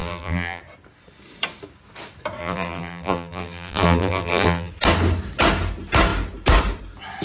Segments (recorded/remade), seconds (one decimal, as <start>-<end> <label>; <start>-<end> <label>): 0.0-0.6 remade; 0.6-2.4 recorded; 2.4-4.7 remade; 4.7-7.2 recorded